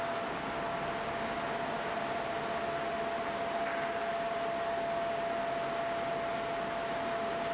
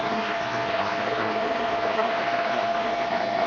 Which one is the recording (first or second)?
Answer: first